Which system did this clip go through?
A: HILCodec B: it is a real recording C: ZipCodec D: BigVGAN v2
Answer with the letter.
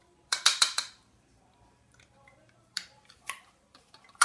D